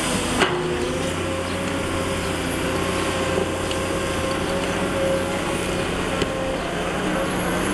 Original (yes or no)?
yes